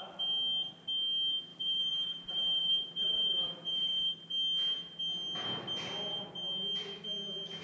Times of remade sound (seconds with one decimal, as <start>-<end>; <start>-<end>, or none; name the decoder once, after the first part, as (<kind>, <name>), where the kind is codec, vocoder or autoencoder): 1.5-4.1 (vocoder, BigVGAN v2)